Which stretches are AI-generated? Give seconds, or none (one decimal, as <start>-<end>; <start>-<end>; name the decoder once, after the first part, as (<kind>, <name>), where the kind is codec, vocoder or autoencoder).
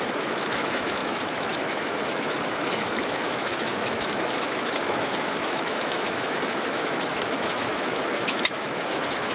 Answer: 0.0-9.3 (autoencoder, DAC-VAE)